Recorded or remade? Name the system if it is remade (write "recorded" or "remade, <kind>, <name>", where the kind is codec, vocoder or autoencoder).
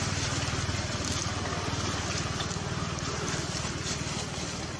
recorded